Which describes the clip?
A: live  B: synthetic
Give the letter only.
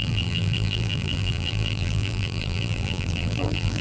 B